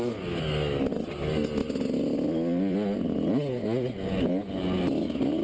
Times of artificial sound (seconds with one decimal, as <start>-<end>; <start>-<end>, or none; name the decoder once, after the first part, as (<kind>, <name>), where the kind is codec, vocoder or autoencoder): none